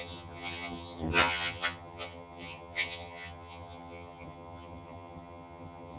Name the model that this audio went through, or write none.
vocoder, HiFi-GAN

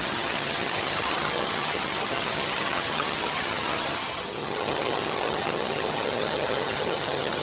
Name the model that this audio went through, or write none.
vocoder, HiFi-GAN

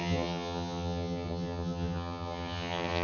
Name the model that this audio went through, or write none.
vocoder, HiFi-GAN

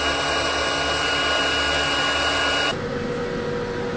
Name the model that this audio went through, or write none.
none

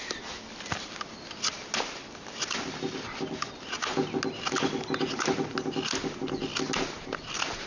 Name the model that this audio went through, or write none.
none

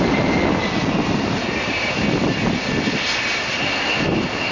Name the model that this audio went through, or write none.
none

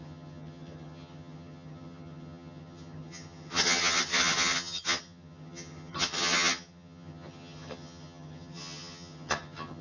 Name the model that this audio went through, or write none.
vocoder, HiFi-GAN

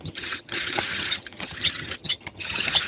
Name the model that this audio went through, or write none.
vocoder, HiFi-GAN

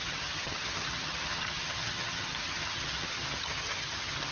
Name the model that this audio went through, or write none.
vocoder, HiFi-GAN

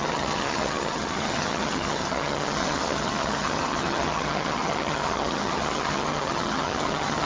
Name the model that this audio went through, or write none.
vocoder, HiFi-GAN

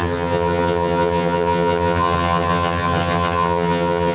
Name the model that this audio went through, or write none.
vocoder, HiFi-GAN